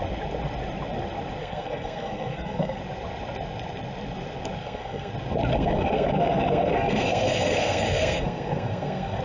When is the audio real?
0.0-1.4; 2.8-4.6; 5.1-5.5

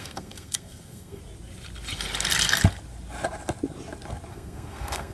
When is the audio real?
1.2-4.3

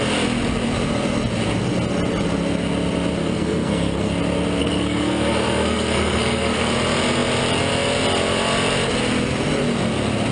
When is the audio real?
0.0-3.2; 4.1-4.6; 6.7-10.3